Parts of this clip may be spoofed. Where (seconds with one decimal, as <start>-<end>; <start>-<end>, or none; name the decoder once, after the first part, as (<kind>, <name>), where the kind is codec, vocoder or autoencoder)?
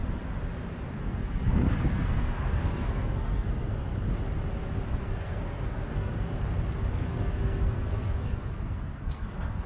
1.0-3.9 (codec, SNAC); 5.0-6.3; 6.9-9.7